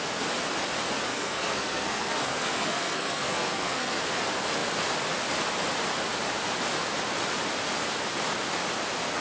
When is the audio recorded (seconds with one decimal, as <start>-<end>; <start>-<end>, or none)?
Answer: 0.0-1.1; 4.0-9.2

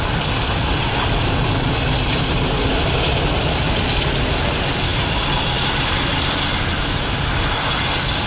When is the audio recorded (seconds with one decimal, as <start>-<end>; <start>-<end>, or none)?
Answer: 0.0-8.3

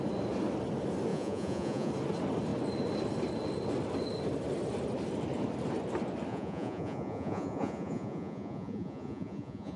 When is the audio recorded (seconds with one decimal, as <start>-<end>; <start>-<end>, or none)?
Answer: 0.0-1.1; 1.9-6.3

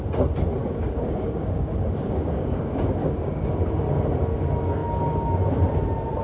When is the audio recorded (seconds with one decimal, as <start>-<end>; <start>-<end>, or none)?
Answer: 0.0-0.6; 3.5-6.2

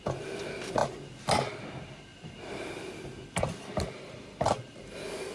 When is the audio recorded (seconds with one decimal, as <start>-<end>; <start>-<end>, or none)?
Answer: 0.0-5.3

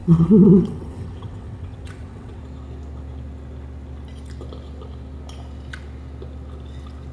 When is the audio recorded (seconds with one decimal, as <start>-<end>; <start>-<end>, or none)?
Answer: 2.4-7.1